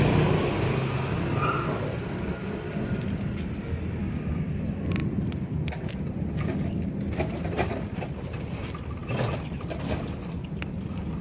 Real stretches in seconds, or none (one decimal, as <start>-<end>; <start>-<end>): 0.0-4.0; 4.5-11.2